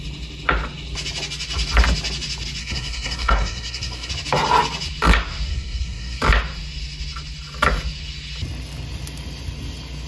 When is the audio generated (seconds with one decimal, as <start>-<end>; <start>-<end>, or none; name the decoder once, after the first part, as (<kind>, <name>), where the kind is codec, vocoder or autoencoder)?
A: 2.6-4.1 (codec, SNAC); 5.5-6.2